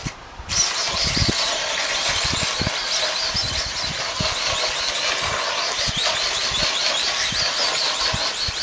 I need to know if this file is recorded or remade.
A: recorded